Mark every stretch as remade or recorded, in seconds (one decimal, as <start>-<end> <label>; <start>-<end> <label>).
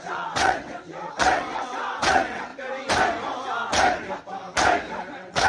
0.0-2.5 remade; 2.5-5.1 recorded; 5.1-5.5 remade